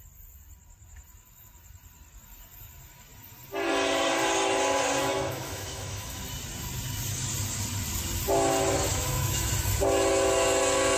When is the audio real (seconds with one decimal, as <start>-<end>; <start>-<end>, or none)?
0.0-5.0; 6.2-8.9; 9.5-11.0